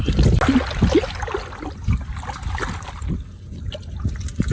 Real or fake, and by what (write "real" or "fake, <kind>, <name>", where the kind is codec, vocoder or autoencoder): real